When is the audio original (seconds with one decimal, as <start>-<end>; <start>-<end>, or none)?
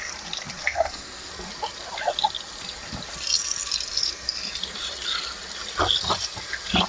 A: 0.0-0.6; 1.3-6.9